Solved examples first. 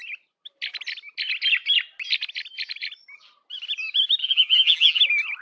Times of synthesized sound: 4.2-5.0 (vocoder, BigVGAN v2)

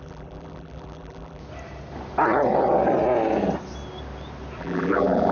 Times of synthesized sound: 0.0-1.4 (vocoder, BigVGAN v2); 4.6-5.3

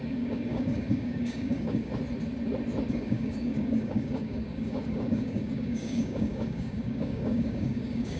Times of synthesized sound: 0.0-1.9 (codec, DAC); 2.9-8.2